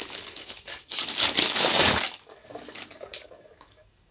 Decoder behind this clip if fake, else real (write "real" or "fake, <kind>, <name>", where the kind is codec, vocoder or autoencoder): fake, codec, DAC